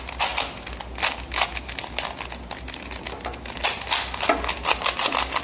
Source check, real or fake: real